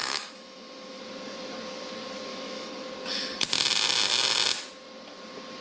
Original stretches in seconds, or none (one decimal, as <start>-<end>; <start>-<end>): 1.0-2.3; 2.9-5.6